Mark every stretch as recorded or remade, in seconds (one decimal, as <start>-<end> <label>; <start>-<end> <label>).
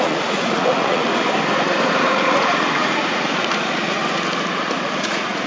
0.0-1.1 remade; 1.1-1.9 recorded; 1.9-4.0 remade; 4.0-4.6 recorded; 4.6-5.5 remade